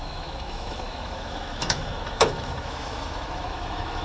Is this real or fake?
fake